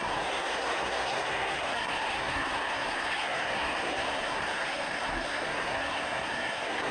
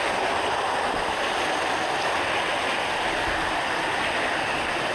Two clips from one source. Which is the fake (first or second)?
first